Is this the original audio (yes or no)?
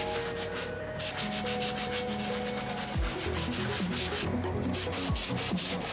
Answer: yes